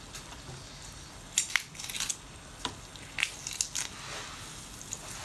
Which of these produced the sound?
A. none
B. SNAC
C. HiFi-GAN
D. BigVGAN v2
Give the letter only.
A